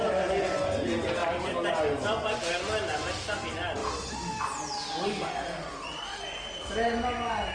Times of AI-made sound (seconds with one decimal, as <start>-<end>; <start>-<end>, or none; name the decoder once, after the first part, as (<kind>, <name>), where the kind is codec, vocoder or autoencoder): 1.2-1.7 (vocoder, BigVGAN v2)